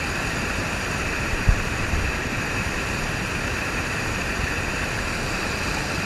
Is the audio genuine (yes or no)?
no